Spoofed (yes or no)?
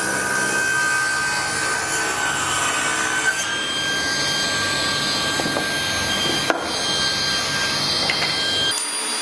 no